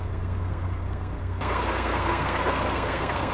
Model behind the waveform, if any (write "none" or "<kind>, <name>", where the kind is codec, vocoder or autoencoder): codec, SNAC